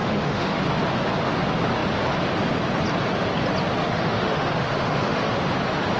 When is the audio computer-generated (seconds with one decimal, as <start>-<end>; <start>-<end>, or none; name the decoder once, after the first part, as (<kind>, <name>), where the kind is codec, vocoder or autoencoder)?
0.0-0.6 (autoencoder, DAC-VAE); 3.8-5.3